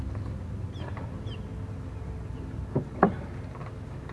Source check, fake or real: real